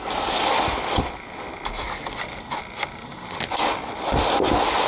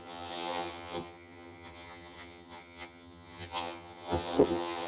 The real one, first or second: first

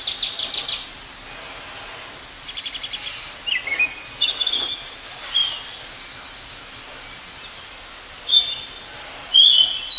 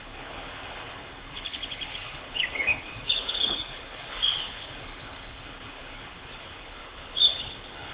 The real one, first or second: first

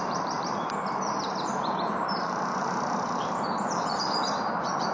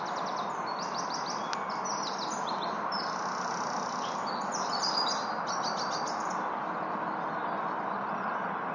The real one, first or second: second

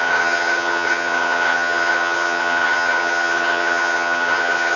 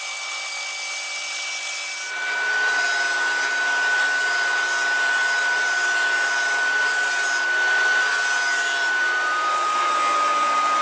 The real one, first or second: second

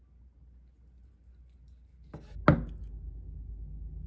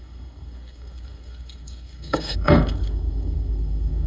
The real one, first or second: first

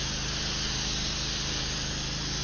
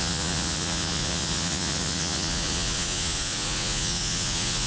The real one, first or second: first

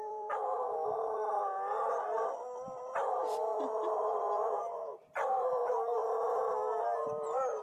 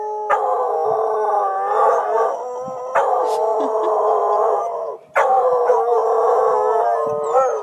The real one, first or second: second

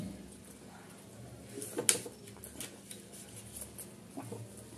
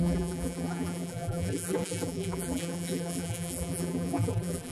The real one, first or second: first